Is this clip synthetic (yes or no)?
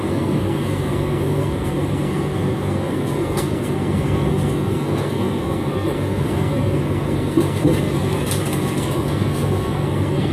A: yes